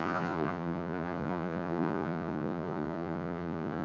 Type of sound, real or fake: fake